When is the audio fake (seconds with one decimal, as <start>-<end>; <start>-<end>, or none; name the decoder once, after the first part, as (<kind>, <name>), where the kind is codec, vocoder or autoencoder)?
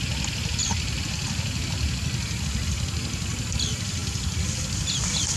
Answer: none